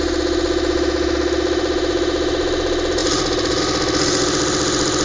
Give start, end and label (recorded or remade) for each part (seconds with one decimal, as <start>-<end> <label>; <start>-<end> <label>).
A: 0.0-3.0 recorded; 3.0-3.6 remade; 3.6-5.0 recorded